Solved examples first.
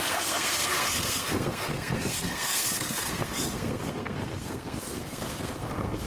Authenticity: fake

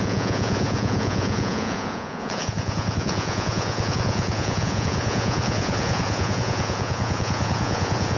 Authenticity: fake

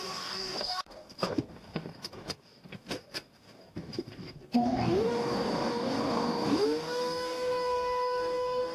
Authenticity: fake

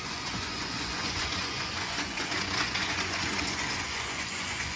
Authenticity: fake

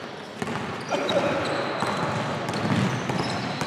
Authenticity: real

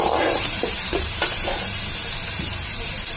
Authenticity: fake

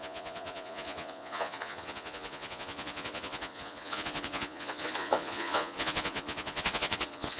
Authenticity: fake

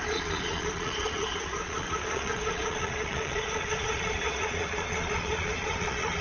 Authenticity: fake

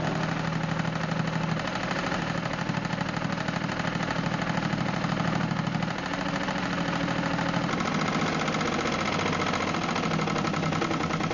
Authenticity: real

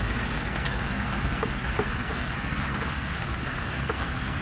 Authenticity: fake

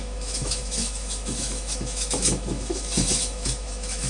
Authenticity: fake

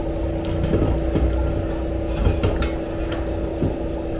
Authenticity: real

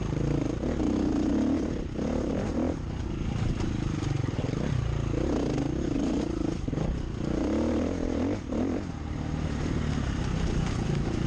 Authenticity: real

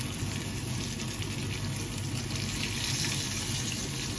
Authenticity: real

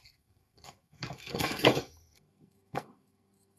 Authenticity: fake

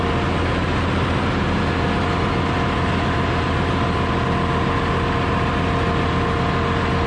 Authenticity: real